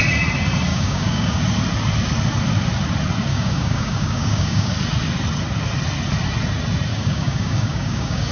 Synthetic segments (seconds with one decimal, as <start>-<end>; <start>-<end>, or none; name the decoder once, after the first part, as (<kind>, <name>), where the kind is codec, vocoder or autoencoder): 0.7-1.4 (codec, DAC); 3.3-4.7; 6.9-8.3